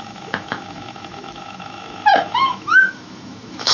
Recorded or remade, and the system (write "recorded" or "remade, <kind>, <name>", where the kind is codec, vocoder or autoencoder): remade, autoencoder, DAC-VAE